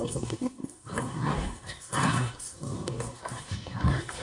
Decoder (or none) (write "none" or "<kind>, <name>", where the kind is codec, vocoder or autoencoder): codec, SNAC